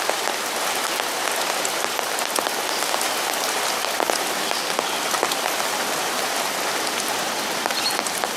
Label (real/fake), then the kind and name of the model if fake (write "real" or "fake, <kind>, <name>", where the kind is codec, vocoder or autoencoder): real